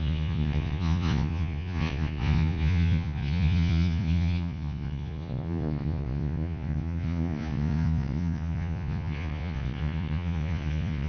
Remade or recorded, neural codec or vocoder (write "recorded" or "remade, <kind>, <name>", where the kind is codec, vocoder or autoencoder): remade, vocoder, Vocos